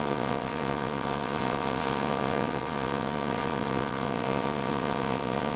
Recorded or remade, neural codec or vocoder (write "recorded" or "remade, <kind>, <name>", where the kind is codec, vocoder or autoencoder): remade, vocoder, WaveNeXt